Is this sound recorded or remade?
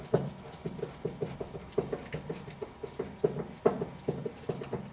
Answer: recorded